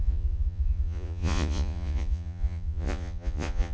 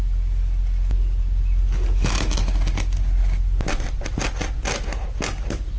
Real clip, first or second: second